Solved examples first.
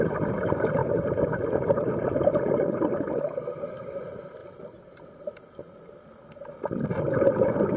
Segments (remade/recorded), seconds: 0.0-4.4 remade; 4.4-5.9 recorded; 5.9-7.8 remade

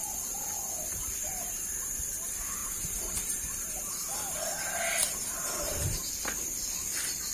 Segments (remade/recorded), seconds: 0.0-2.6 recorded; 2.6-6.1 remade; 6.1-7.3 recorded

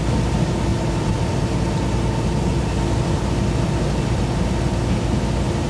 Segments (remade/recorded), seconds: 0.0-0.7 recorded; 0.7-1.5 remade; 1.5-5.7 recorded

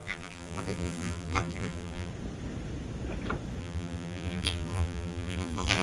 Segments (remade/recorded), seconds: 0.0-2.1 remade; 2.1-3.6 recorded; 3.6-5.8 remade

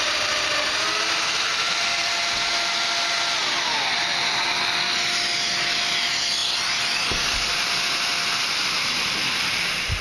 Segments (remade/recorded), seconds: 0.0-10.0 recorded

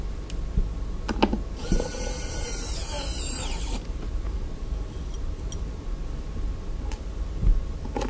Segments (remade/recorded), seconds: 0.0-1.6 recorded; 1.6-6.0 remade; 6.0-8.1 recorded

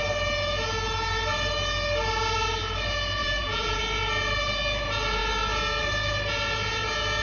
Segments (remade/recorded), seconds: 0.0-3.2 recorded; 3.2-3.8 remade; 3.8-7.2 recorded